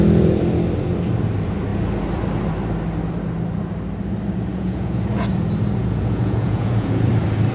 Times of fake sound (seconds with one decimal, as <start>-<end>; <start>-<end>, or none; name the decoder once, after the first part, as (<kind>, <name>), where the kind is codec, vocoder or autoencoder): 4.5-5.3 (vocoder, Vocos); 5.8-7.1